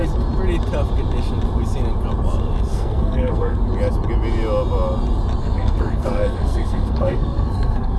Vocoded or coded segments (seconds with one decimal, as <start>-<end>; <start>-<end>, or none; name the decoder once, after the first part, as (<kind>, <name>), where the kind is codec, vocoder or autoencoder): 2.7-3.6 (codec, SNAC); 5.4-8.0